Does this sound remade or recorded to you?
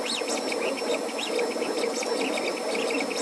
recorded